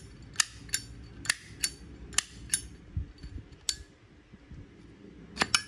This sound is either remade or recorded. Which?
recorded